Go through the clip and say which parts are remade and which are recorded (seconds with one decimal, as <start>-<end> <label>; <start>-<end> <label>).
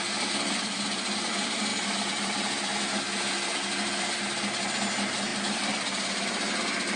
0.0-7.0 recorded